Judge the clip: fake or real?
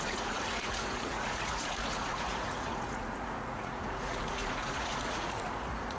fake